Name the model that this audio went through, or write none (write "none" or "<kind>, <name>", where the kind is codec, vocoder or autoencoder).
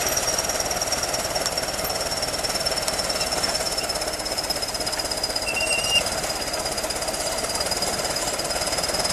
vocoder, BigVGAN v2